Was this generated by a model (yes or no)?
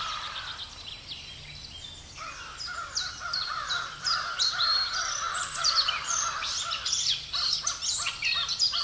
yes